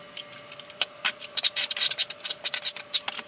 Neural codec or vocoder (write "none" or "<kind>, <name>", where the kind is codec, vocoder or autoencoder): none